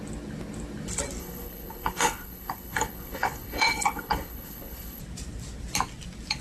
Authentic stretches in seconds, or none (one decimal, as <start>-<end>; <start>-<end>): 0.0-1.2; 5.0-6.4